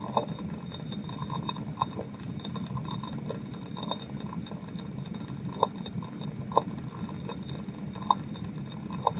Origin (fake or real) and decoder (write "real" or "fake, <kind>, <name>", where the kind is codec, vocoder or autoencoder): real